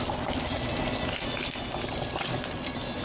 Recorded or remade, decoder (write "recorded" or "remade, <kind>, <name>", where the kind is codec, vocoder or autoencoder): remade, vocoder, BigVGAN v2